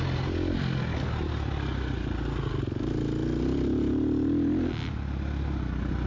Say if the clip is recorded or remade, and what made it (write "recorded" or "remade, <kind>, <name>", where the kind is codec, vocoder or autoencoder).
recorded